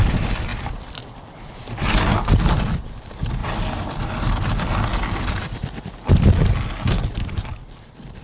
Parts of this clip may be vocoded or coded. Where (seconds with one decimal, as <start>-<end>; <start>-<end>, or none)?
0.5-2.0